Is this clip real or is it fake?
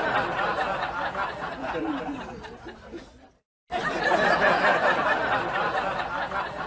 real